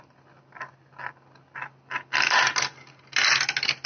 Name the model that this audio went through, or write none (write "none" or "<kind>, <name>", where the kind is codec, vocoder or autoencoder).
none